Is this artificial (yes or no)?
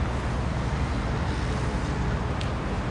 no